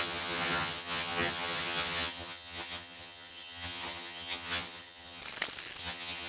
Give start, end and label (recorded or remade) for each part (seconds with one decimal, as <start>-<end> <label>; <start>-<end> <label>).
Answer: 0.0-5.2 remade; 5.2-5.8 recorded; 5.8-6.3 remade